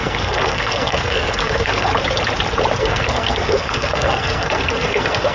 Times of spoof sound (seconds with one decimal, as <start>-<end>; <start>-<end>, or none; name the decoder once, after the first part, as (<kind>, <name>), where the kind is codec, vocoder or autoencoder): 0.0-1.9 (codec, SNAC); 2.8-5.3